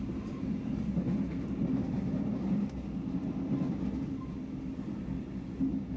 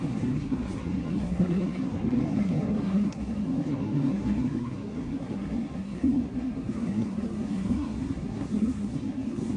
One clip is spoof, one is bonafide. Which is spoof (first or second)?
second